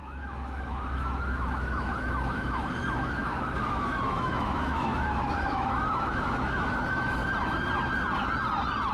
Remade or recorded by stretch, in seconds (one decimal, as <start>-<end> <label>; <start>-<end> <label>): 0.0-7.2 remade; 7.2-8.9 recorded